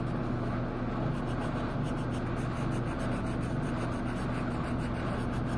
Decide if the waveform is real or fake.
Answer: real